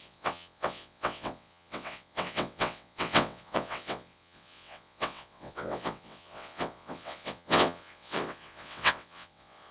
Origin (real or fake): fake